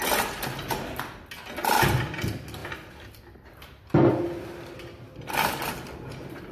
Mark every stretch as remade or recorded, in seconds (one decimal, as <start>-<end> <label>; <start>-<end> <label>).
0.0-6.5 recorded